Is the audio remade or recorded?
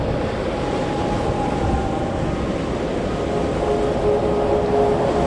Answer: recorded